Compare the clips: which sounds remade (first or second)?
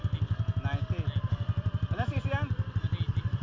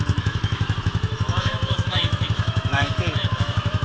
second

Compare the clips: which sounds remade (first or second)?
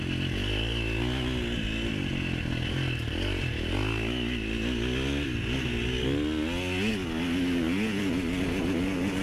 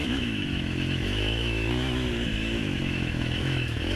second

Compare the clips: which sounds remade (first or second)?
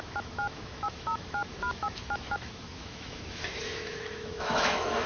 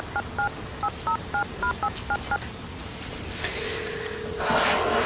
first